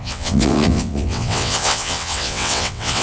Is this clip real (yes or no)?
no